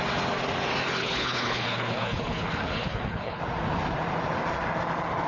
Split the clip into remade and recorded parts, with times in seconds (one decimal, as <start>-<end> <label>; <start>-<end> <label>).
0.0-1.0 recorded; 1.0-3.4 remade; 3.4-5.3 recorded